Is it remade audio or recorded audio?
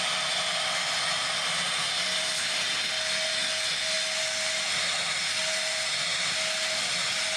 recorded